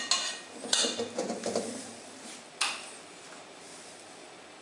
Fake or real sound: real